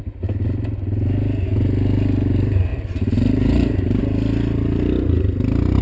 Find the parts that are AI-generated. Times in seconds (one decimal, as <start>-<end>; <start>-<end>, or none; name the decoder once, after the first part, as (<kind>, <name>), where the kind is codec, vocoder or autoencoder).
2.7-4.0 (vocoder, BigVGAN v2)